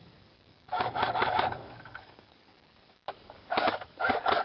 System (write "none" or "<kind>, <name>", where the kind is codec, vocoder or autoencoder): codec, DAC